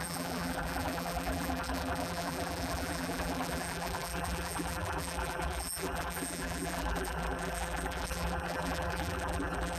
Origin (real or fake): fake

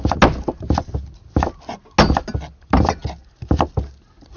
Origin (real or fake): real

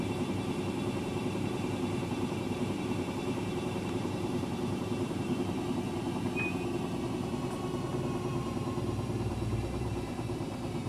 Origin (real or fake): fake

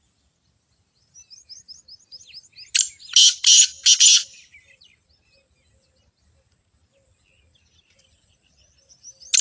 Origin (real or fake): real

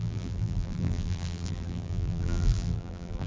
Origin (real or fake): fake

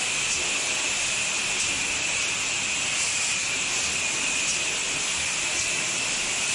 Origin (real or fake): real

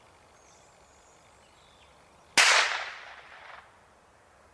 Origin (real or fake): real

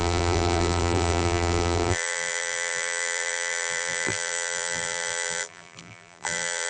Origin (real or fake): fake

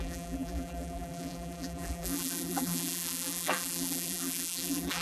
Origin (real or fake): fake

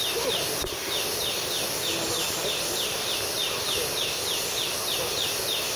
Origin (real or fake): real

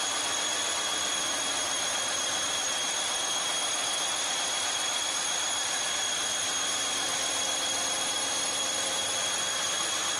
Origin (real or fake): real